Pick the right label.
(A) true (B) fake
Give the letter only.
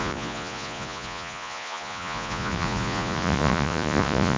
B